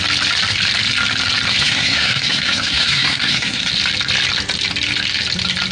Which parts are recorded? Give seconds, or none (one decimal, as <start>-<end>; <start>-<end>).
0.0-1.6; 3.7-5.7